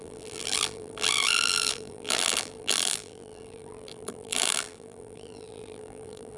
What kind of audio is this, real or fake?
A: fake